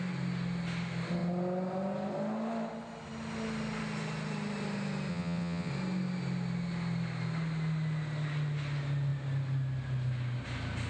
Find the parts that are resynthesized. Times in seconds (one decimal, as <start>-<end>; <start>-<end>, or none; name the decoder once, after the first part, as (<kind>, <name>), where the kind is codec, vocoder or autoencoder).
5.1-5.7 (vocoder, WaveNeXt)